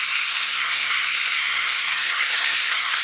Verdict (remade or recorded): remade